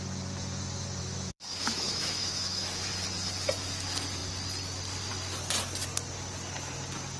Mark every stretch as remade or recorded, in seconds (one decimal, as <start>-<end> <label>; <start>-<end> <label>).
0.0-1.0 recorded; 1.0-2.9 remade; 2.9-7.2 recorded